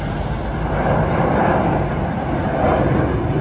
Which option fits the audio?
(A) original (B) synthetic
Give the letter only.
A